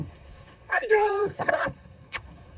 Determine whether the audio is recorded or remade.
remade